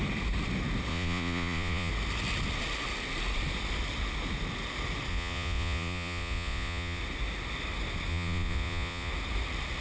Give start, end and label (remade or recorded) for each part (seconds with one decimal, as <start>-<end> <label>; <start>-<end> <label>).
0.0-0.9 recorded; 0.9-1.9 remade; 1.9-5.1 recorded; 5.1-7.0 remade; 7.0-8.1 recorded; 8.1-9.1 remade; 9.1-9.8 recorded